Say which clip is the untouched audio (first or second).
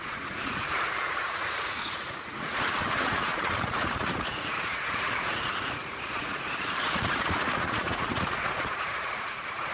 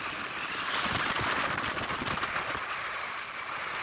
second